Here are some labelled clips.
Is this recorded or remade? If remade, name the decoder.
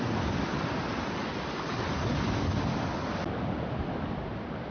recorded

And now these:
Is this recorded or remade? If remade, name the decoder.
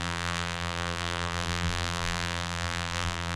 remade, vocoder, BigVGAN v2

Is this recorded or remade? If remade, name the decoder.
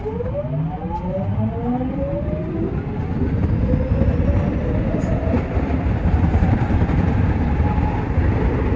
recorded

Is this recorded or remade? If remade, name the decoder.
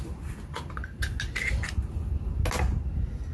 recorded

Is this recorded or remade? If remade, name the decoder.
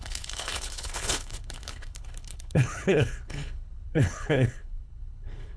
remade, codec, HILCodec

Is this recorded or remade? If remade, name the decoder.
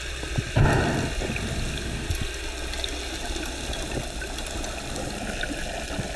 recorded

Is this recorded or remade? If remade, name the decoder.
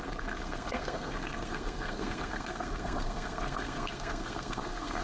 remade, codec, SNAC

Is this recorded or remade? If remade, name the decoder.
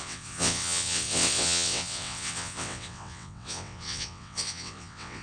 remade, vocoder, WaveNeXt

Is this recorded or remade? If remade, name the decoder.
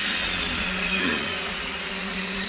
remade, vocoder, Vocos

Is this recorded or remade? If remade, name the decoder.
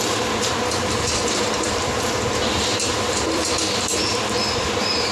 remade, vocoder, BigVGAN v2